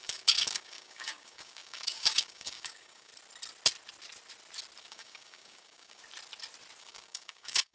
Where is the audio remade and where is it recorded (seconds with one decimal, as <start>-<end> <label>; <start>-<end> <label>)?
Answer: 0.0-3.1 remade; 3.1-4.8 recorded; 4.8-6.0 remade; 6.0-6.8 recorded; 6.8-7.7 remade